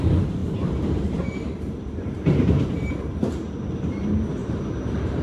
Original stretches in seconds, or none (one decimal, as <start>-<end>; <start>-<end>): 0.0-0.4; 3.3-4.4